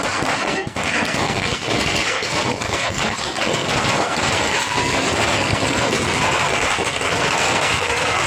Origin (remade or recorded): remade